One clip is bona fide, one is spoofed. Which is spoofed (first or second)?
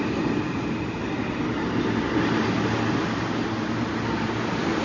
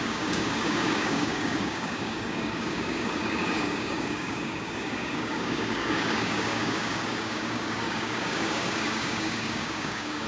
second